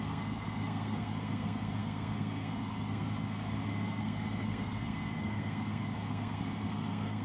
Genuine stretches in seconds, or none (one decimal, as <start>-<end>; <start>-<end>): none